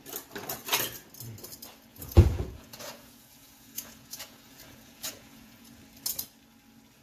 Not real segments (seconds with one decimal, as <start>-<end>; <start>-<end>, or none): 1.9-5.8